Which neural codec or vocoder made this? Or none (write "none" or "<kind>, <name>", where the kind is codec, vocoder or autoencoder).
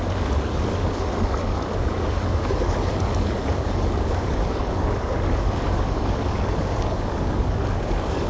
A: codec, DAC